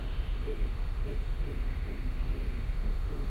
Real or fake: fake